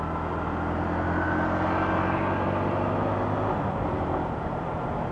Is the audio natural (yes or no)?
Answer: yes